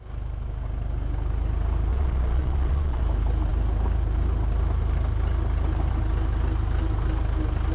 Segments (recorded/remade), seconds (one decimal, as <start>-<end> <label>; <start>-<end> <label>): 0.0-1.9 recorded; 1.9-3.0 remade; 3.0-7.7 recorded